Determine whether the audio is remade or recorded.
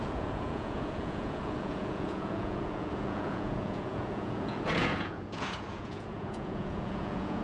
remade